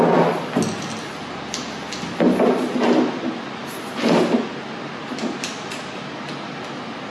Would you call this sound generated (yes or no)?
no